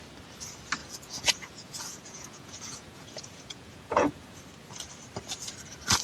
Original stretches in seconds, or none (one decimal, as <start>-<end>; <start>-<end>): 0.0-0.8; 4.4-6.0